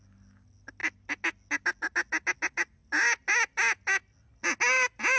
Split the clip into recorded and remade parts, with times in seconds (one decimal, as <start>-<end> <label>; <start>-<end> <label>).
0.0-5.2 recorded

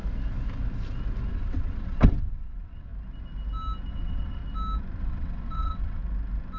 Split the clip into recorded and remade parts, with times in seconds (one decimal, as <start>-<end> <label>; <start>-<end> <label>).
0.0-1.3 recorded; 1.3-2.9 remade; 2.9-3.9 recorded; 3.9-4.4 remade; 4.4-5.0 recorded; 5.0-6.0 remade; 6.0-6.6 recorded